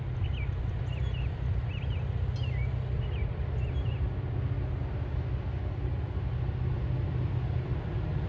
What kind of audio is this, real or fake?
real